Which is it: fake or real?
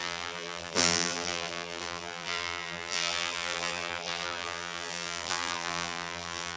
fake